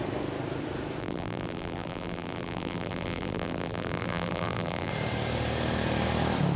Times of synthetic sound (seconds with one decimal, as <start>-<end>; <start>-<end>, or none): 1.0-4.9